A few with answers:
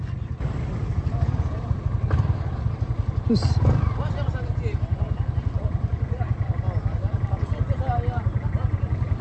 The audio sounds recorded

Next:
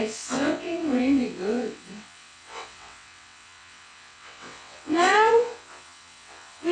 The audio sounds remade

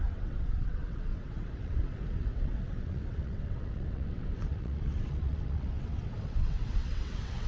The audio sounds remade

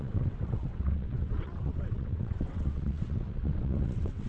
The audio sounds remade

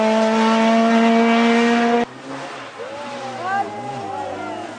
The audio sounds recorded